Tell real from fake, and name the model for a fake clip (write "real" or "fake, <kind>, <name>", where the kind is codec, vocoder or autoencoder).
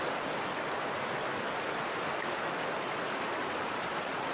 real